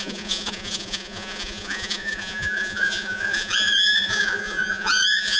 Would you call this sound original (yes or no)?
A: no